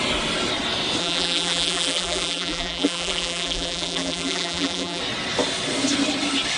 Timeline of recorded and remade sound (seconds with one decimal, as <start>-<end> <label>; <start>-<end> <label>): 0.0-1.0 recorded; 1.0-5.0 remade; 5.0-6.6 recorded